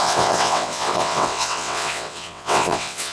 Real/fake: fake